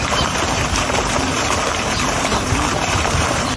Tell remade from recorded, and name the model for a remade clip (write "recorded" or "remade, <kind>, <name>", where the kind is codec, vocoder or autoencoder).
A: remade, vocoder, BigVGAN v2